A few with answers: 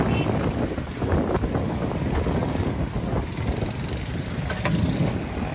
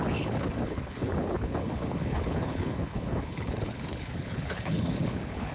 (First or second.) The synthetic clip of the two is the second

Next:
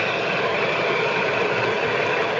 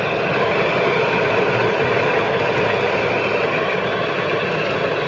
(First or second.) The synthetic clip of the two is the first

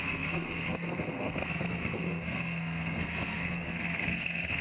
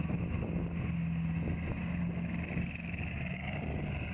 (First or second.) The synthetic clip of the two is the first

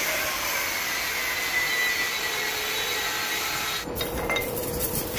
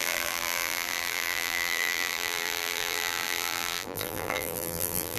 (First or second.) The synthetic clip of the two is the second